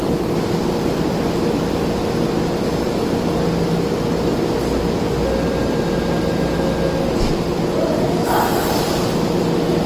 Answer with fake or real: real